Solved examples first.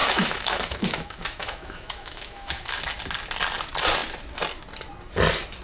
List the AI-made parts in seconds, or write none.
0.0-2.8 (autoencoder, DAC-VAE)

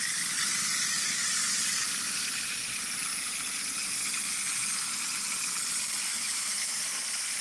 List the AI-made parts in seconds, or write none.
6.1-6.8 (autoencoder, DAC-VAE)

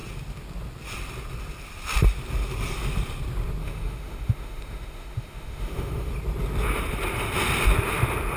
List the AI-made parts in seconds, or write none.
3.6-6.1 (autoencoder, DAC-VAE)